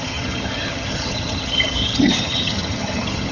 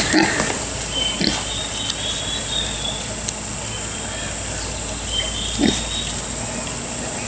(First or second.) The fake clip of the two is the first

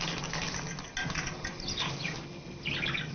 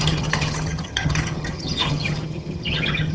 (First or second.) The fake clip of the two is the second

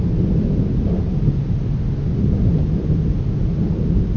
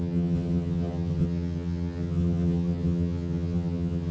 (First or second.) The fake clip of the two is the second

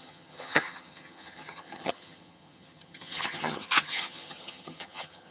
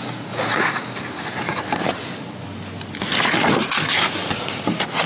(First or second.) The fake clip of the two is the first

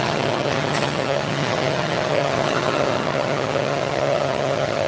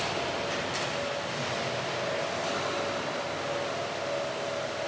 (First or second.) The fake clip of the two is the first